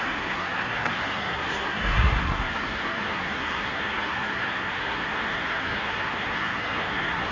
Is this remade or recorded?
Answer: remade